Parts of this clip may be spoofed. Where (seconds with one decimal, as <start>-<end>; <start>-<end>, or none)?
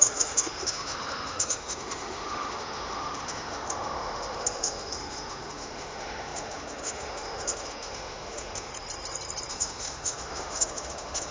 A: 0.0-8.7; 9.5-11.3